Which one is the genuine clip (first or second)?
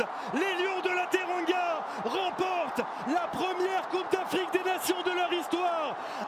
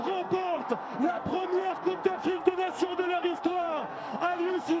first